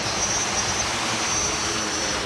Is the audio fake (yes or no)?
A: yes